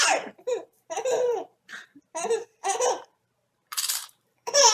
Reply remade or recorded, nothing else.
remade